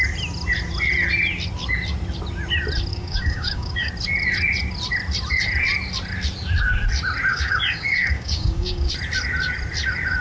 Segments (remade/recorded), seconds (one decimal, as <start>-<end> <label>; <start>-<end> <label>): 0.0-2.9 recorded; 2.9-3.9 remade; 3.9-7.3 recorded; 7.3-8.9 remade; 8.9-10.2 recorded